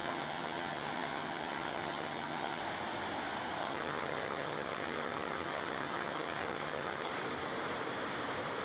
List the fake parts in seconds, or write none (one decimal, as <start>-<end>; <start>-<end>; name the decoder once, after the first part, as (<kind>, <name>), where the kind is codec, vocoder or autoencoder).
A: 0.0-2.6 (vocoder, HiFi-GAN); 3.6-7.1